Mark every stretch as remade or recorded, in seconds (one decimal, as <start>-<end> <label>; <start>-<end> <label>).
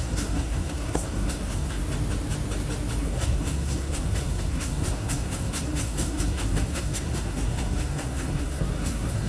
0.0-1.8 remade; 1.8-3.0 recorded; 3.0-9.3 remade